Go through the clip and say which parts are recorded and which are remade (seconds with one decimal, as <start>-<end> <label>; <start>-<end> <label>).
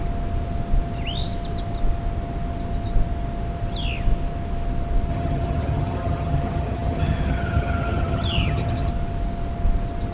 0.0-5.1 recorded; 5.1-8.9 remade; 8.9-10.1 recorded